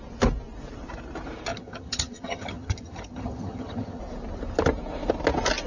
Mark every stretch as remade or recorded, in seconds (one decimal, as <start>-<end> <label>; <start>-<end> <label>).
0.0-1.5 recorded; 1.5-4.0 remade; 4.0-5.7 recorded